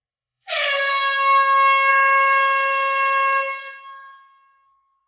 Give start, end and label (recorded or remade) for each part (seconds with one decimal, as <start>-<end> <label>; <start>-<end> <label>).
0.0-0.9 remade; 0.9-1.9 recorded; 1.9-5.1 remade